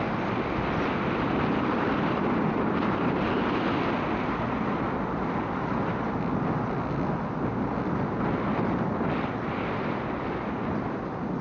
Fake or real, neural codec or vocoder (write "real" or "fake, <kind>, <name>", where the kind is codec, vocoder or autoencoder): real